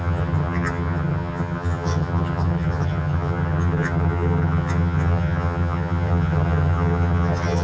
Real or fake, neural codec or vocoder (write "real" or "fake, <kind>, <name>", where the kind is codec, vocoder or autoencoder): fake, vocoder, HiFi-GAN